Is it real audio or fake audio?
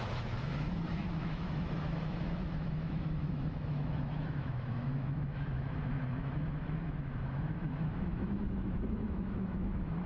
fake